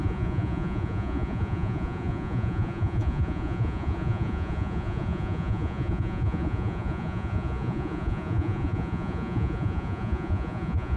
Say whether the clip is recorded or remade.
remade